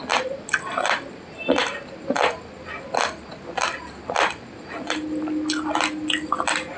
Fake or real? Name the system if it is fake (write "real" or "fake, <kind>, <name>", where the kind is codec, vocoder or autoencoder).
real